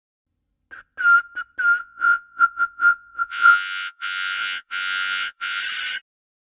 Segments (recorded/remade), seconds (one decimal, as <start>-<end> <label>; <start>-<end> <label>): 0.0-1.8 recorded; 1.8-5.6 remade; 5.6-6.4 recorded